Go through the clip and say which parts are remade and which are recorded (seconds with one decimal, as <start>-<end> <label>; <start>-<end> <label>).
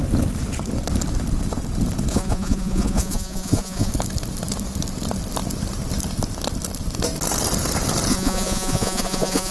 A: 0.0-2.1 recorded; 2.1-3.9 remade; 3.9-8.1 recorded; 8.1-9.5 remade